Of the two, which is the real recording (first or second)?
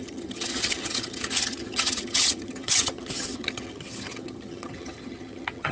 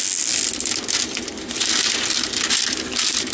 second